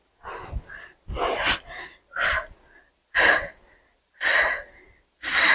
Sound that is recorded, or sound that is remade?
recorded